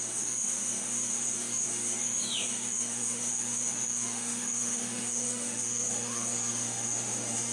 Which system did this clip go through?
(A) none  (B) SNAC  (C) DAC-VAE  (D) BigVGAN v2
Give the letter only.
C